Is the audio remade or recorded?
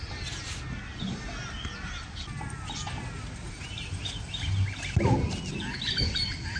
recorded